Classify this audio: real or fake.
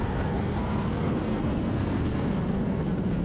fake